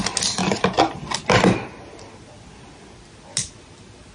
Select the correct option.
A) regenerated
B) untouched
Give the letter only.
B